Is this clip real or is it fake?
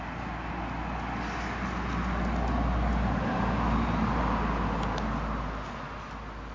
real